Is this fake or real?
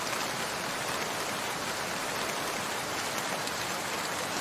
real